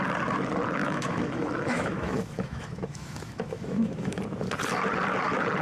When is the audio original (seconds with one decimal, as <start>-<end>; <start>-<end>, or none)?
0.0-0.8; 4.2-5.6